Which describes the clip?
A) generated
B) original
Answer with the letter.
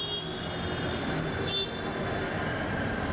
B